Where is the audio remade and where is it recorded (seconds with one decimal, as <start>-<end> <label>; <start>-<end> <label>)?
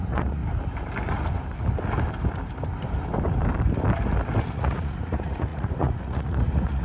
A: 0.0-0.4 remade; 0.4-4.5 recorded; 4.5-6.8 remade